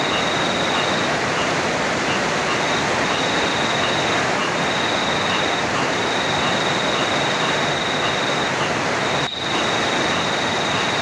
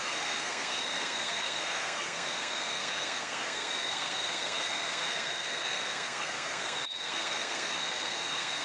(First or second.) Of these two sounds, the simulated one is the second